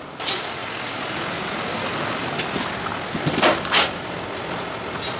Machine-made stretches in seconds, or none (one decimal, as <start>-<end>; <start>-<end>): none